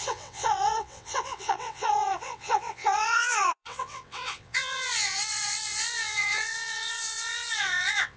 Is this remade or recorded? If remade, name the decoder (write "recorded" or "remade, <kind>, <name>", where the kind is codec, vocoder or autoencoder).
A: remade, vocoder, WaveNeXt